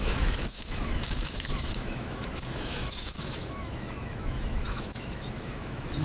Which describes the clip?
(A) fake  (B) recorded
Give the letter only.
A